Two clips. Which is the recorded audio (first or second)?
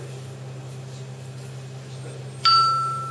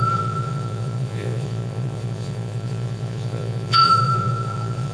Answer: first